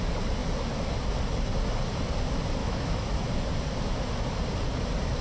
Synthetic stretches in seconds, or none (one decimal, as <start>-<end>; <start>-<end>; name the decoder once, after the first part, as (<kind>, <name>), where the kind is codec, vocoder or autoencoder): 2.6-3.4 (autoencoder, DAC-VAE)